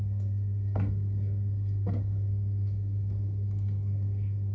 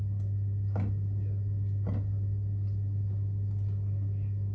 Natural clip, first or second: second